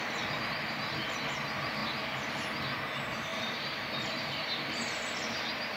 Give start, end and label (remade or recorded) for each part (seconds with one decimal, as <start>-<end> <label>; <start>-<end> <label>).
0.0-3.3 recorded; 3.3-4.0 remade; 4.0-5.8 recorded